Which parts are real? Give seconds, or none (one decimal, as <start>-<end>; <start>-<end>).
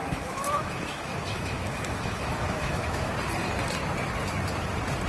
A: 3.1-5.1